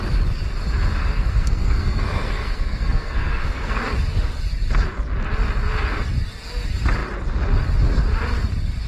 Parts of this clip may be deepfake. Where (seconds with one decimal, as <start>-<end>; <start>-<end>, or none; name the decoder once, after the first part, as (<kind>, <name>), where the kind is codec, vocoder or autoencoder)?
1.0-3.8 (codec, SNAC)